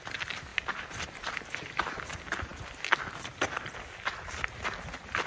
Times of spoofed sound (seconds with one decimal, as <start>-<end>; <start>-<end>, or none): 0.5-2.0